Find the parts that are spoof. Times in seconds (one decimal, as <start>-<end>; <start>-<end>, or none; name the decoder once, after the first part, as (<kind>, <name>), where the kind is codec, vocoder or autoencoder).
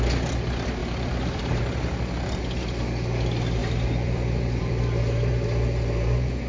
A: 0.8-1.6 (vocoder, BigVGAN v2); 3.6-5.3